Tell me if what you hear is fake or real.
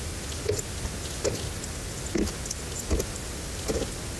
real